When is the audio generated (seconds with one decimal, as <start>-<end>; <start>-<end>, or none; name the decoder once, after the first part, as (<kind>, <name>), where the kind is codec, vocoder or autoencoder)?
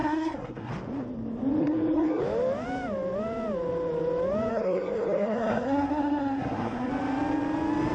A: 0.0-0.7 (codec, SNAC); 1.6-2.2; 4.5-6.9